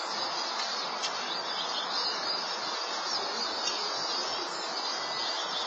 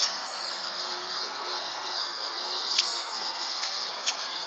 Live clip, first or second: first